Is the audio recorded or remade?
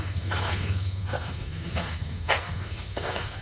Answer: remade